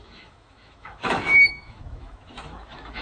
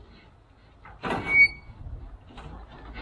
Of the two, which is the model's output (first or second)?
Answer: first